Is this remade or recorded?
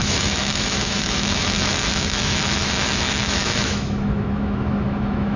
remade